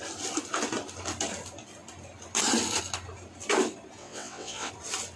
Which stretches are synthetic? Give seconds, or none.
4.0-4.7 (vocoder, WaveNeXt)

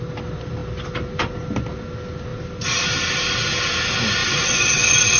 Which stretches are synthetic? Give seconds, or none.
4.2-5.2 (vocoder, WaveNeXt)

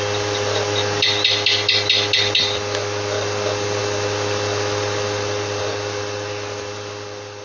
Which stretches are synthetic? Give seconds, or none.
none

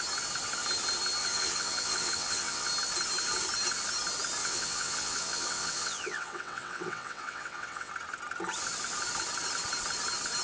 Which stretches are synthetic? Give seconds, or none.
1.2-2.7 (vocoder, WaveNeXt); 4.4-7.9